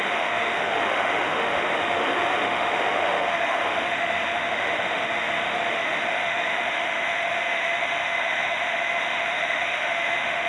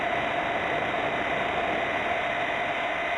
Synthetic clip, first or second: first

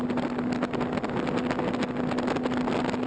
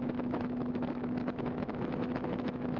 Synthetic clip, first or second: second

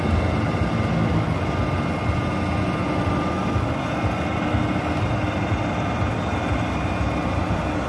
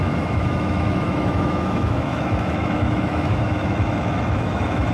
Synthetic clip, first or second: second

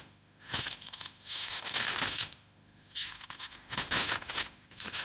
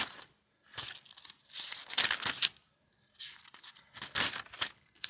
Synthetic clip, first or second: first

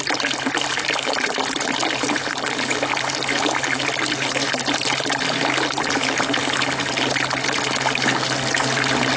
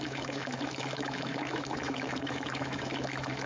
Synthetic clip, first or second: second